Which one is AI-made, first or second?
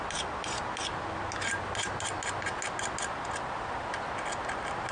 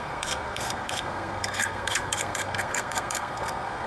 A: second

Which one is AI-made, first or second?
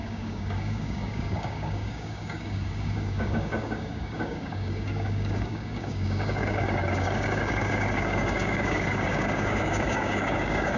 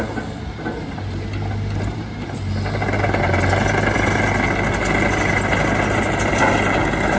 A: first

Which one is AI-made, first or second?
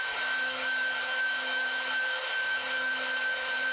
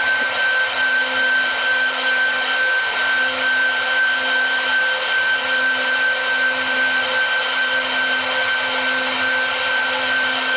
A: first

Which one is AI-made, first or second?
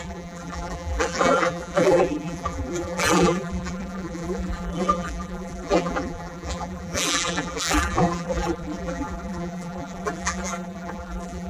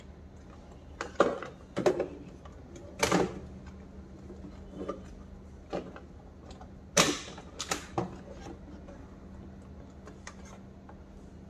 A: first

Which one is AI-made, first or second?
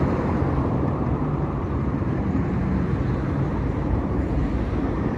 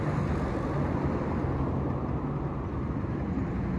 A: first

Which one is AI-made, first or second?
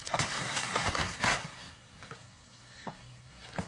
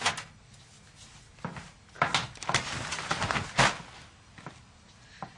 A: first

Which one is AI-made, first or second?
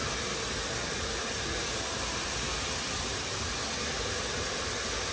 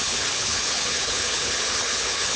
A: second